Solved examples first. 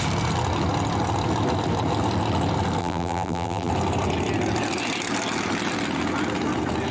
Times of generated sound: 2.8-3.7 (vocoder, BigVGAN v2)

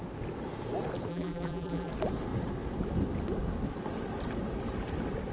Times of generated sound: 1.1-1.9 (vocoder, BigVGAN v2)